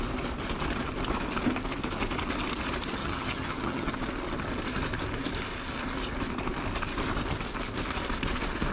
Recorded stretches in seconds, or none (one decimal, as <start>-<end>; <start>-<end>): 0.0-3.0; 4.0-8.7